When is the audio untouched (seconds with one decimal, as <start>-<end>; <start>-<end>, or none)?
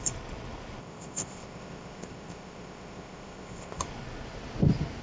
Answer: 0.0-0.8; 3.8-5.0